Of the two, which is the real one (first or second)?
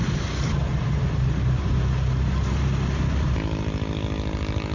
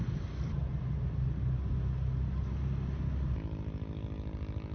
second